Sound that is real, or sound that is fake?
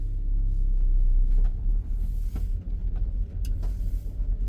real